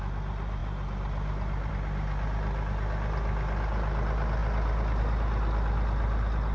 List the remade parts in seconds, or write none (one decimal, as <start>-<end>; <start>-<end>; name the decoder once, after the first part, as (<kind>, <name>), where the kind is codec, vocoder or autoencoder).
none

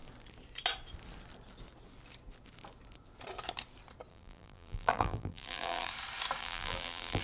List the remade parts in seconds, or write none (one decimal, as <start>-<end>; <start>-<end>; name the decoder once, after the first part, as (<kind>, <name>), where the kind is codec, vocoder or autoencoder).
4.1-5.9 (vocoder, BigVGAN v2); 6.4-7.2

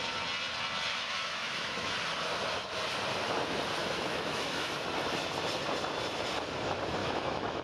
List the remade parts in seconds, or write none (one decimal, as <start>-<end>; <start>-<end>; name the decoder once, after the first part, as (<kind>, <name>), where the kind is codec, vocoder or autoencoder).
0.9-1.9 (autoencoder, DAC-VAE); 3.8-4.7; 7.0-7.6